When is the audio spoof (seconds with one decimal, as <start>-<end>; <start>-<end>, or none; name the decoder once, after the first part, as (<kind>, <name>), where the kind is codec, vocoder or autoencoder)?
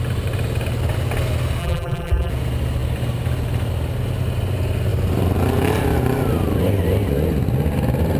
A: 1.6-2.3 (vocoder, BigVGAN v2)